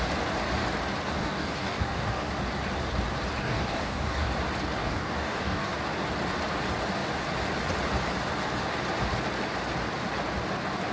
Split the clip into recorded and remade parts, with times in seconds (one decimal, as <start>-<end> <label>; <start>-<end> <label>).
0.0-1.2 recorded; 1.2-2.3 remade; 2.3-3.4 recorded; 3.4-4.3 remade; 4.3-4.8 recorded; 4.8-5.7 remade; 5.7-10.9 recorded